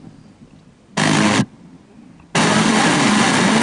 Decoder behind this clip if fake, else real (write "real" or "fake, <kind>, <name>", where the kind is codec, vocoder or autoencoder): real